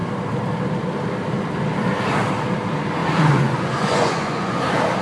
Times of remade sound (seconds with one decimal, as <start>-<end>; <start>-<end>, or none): 3.0-4.6